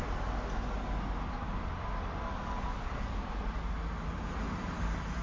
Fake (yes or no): no